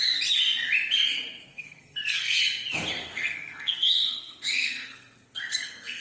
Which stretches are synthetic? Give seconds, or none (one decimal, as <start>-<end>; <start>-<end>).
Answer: 1.5-2.4; 3.0-6.0